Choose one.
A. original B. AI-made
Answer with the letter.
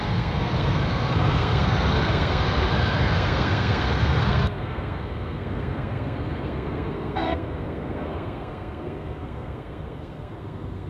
B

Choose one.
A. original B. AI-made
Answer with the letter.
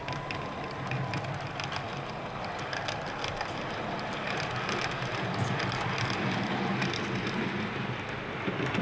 A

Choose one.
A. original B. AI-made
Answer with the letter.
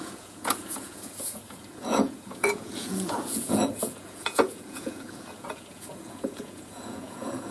B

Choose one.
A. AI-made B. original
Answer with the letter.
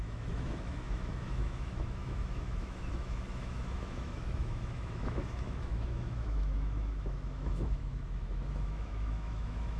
A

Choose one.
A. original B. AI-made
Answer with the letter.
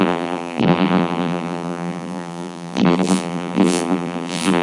B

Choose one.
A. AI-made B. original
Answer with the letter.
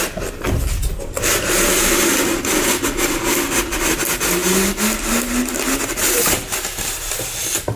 B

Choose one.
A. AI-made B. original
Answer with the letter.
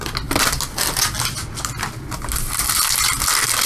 B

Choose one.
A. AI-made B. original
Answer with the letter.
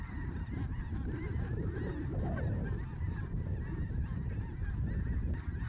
B